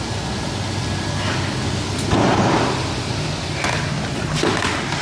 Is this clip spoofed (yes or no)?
no